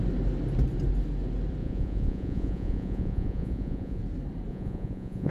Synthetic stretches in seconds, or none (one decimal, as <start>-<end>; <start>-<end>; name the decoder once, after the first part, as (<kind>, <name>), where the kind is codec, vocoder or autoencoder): 1.6-4.0 (vocoder, Vocos); 4.5-5.3